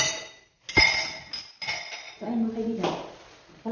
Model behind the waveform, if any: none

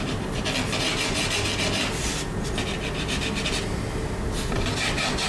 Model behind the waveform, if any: none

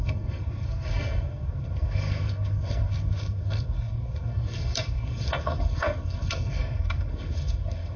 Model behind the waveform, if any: codec, SNAC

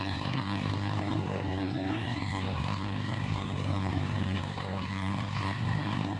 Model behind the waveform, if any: codec, SNAC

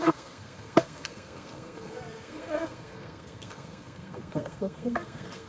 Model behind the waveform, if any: codec, SNAC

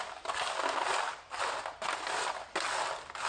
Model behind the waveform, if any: none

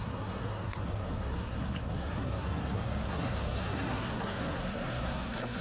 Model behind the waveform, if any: codec, SNAC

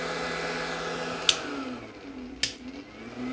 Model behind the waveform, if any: none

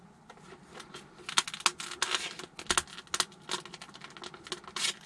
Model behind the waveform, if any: none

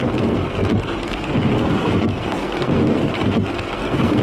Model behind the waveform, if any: codec, SNAC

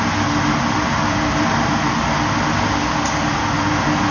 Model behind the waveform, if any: none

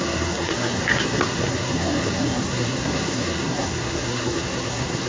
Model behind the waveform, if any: codec, SNAC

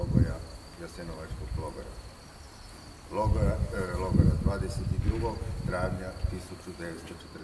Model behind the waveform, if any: none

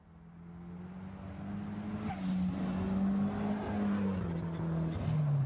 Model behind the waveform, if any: none